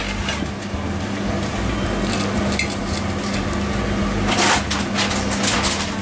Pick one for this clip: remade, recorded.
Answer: recorded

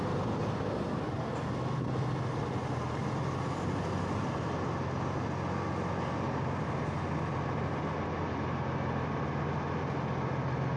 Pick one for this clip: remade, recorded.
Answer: recorded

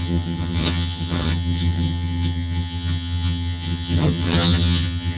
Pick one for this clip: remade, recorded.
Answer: remade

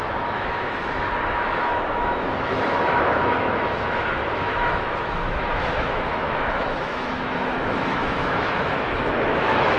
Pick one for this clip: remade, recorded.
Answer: remade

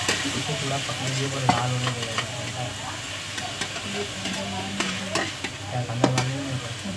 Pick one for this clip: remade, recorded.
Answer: recorded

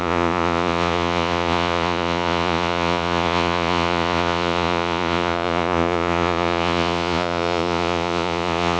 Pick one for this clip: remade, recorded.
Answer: remade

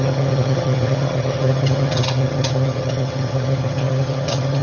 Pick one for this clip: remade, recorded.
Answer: remade